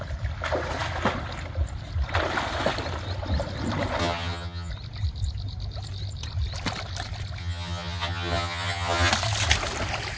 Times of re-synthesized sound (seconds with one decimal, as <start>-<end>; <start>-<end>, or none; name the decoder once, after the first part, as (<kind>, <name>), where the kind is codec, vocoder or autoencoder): 4.0-4.7 (vocoder, HiFi-GAN); 7.4-9.1